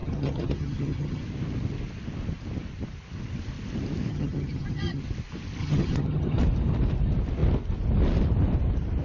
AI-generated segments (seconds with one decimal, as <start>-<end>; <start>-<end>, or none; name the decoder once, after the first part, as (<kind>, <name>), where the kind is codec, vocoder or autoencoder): 0.0-1.2 (vocoder, HiFi-GAN); 4.1-5.0; 5.6-6.4